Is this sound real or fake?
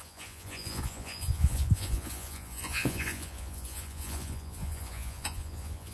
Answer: fake